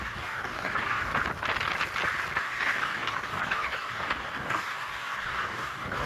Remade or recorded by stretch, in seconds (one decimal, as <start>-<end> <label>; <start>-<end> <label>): 0.0-1.1 remade; 1.1-2.4 recorded; 2.4-6.1 remade